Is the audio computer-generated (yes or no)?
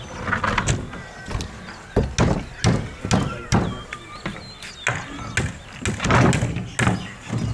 no